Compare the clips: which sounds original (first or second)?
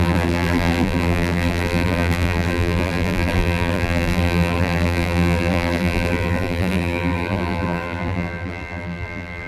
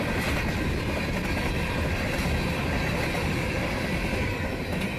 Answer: second